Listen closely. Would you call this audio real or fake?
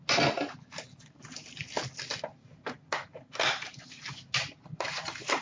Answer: real